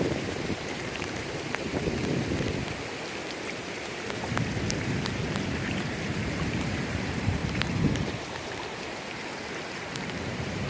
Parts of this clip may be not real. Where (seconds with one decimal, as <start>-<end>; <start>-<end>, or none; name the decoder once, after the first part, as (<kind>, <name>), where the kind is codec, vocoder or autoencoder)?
0.0-2.0 (vocoder, BigVGAN v2); 3.3-10.7